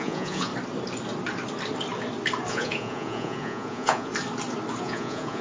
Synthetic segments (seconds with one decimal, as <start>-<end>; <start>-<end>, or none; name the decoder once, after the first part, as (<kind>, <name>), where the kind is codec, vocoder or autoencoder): 0.0-0.5 (vocoder, Vocos); 2.5-4.1; 4.8-5.4